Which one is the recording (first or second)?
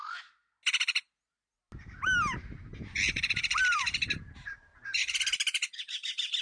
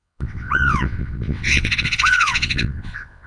first